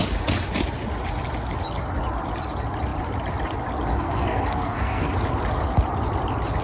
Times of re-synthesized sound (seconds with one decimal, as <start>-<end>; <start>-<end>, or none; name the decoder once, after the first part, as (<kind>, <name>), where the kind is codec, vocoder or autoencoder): 3.9-5.1 (codec, SNAC)